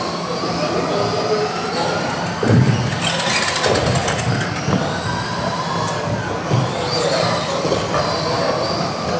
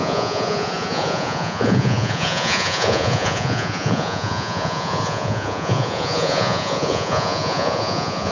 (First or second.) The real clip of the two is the first